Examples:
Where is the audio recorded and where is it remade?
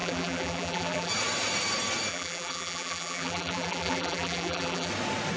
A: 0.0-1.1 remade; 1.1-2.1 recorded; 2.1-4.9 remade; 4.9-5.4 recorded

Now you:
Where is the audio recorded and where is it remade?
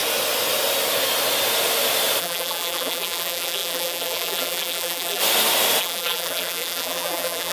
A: 0.0-2.2 recorded; 2.2-5.2 remade; 5.2-5.8 recorded; 5.8-7.5 remade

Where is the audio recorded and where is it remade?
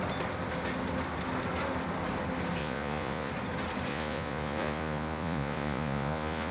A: 0.0-2.6 recorded; 2.6-3.3 remade; 3.3-3.9 recorded; 3.9-6.5 remade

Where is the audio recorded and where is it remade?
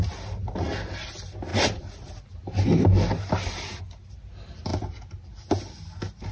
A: 0.0-6.3 recorded